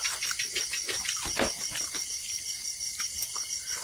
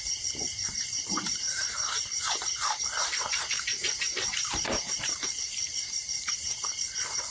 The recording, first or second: first